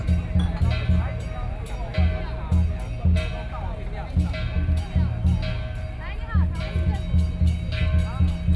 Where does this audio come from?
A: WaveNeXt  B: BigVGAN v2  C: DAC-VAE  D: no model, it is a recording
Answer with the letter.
D